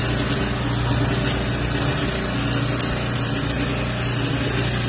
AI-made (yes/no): no